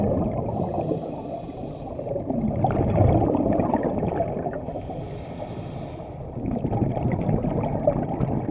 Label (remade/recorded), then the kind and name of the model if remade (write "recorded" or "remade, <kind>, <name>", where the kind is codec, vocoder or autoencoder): remade, vocoder, BigVGAN v2